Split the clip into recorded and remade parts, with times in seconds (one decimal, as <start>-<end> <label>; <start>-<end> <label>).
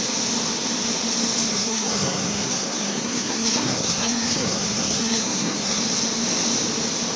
0.0-1.5 recorded; 1.5-5.8 remade; 5.8-7.2 recorded